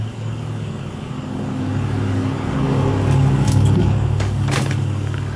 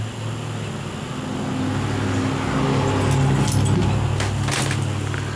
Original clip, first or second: second